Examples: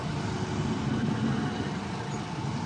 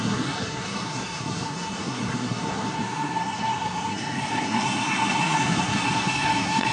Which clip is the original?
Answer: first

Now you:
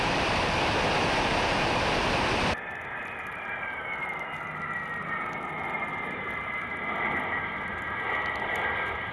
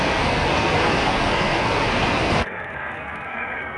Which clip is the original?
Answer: first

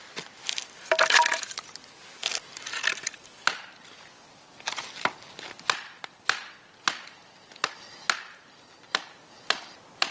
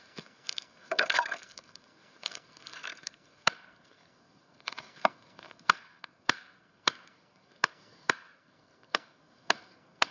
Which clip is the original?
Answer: first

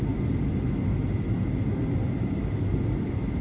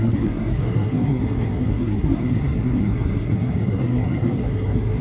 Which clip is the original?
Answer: first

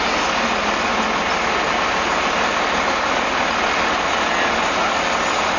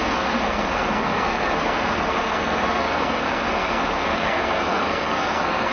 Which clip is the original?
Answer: first